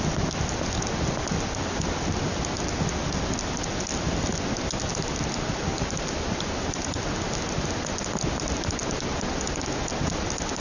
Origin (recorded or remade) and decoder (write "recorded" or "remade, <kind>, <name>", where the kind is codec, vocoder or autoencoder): recorded